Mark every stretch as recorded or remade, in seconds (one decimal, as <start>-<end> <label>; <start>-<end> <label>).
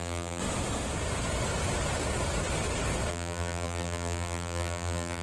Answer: 0.0-0.4 remade; 0.4-3.1 recorded; 3.1-5.2 remade